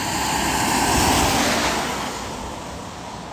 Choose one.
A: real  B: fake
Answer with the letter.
A